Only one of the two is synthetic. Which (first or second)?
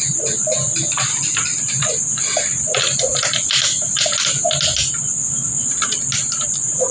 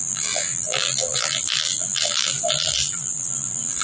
second